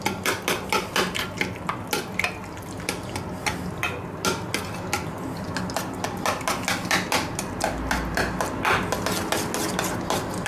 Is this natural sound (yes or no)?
yes